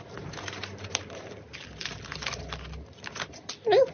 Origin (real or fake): real